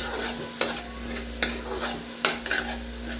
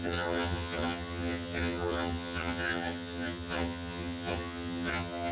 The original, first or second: first